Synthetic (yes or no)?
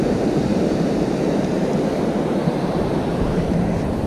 yes